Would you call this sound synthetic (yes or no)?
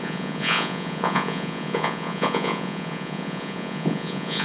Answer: yes